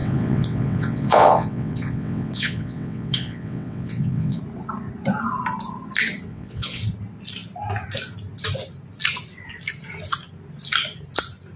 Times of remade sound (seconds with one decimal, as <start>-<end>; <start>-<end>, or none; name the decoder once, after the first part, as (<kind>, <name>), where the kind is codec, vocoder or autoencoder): 0.0-4.4 (vocoder, WaveNeXt); 6.3-6.8